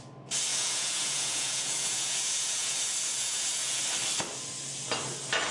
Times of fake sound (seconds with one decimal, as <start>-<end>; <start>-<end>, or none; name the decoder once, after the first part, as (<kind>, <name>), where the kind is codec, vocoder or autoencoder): 0.5-3.8 (vocoder, Vocos)